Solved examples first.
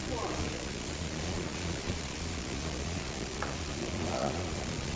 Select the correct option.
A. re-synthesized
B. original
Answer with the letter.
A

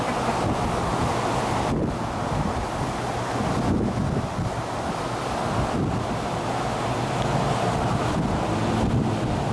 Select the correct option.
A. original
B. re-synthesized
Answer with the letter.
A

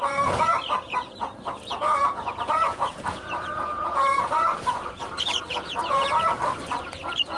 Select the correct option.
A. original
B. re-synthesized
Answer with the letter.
B